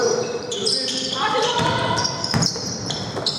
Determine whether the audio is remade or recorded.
remade